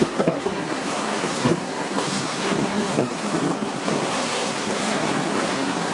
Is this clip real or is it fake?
fake